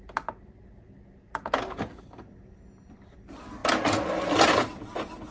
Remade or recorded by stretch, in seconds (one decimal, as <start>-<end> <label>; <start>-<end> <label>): 0.0-5.3 recorded